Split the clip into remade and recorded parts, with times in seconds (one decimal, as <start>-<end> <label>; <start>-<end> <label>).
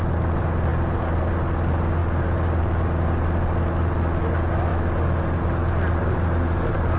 0.0-7.0 recorded